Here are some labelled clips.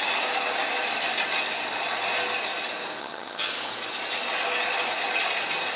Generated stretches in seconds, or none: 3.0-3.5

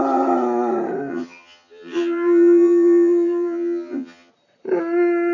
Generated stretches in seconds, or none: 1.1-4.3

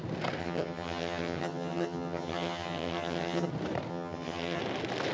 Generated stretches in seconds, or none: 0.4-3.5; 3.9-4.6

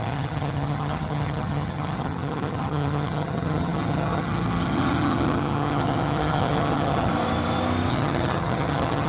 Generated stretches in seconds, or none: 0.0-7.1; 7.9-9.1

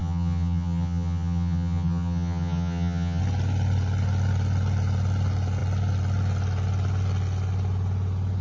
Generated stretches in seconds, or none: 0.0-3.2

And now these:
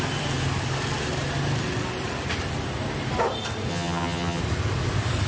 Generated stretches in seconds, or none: 3.7-4.4

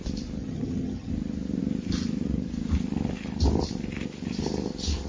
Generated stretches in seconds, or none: 0.4-1.1

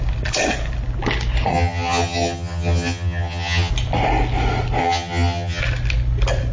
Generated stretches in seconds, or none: 1.5-3.7; 4.8-5.6